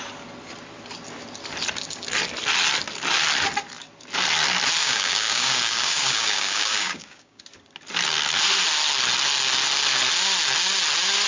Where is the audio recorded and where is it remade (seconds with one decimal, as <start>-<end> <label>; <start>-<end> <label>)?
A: 0.0-4.8 recorded; 4.8-7.4 remade; 7.4-11.3 recorded